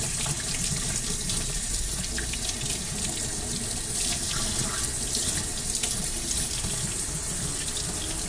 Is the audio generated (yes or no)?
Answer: no